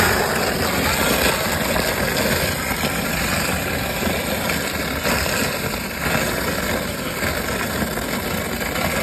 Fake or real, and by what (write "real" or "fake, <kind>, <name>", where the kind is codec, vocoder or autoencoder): real